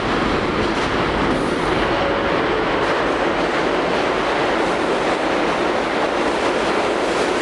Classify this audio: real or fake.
real